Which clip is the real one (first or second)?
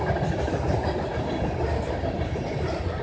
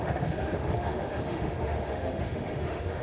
first